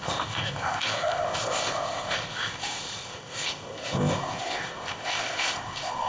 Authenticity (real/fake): fake